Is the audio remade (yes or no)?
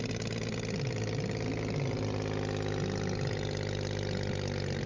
no